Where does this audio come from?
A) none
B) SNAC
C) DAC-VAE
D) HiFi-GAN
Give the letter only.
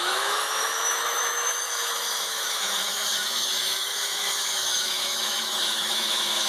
C